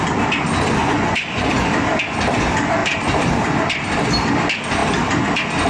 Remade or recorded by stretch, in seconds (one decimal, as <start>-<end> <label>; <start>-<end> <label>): 0.0-0.8 recorded; 0.8-1.4 remade; 1.4-5.7 recorded